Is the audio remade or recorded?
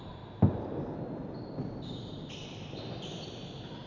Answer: recorded